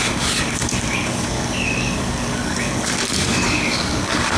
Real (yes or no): no